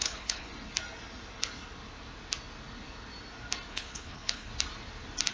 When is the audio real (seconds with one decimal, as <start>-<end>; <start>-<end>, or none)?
0.5-3.7; 4.5-5.3